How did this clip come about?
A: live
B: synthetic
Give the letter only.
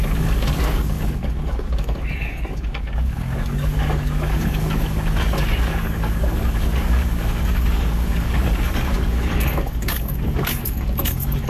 B